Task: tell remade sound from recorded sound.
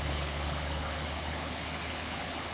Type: remade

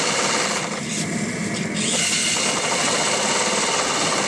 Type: recorded